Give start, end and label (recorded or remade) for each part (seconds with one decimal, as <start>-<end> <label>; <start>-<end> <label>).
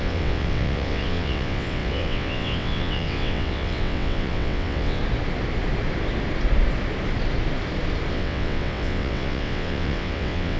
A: 0.0-5.0 remade; 5.0-8.1 recorded; 8.1-10.6 remade